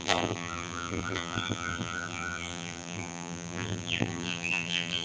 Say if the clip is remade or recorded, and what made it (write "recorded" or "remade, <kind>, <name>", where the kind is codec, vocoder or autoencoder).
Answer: remade, vocoder, BigVGAN v2